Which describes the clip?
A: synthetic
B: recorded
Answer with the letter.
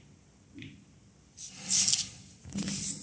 B